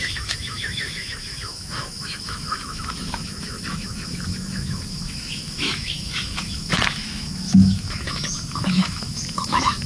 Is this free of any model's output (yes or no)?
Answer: no